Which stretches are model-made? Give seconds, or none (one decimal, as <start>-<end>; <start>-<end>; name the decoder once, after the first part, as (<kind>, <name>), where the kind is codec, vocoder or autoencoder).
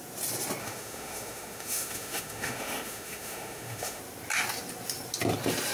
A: 0.6-4.0 (autoencoder, DAC-VAE)